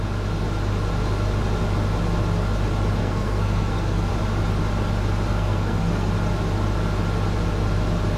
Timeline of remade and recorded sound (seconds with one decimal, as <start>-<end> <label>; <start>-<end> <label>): 0.0-3.0 recorded; 3.0-4.1 remade; 4.1-5.3 recorded; 5.3-6.1 remade; 6.1-8.2 recorded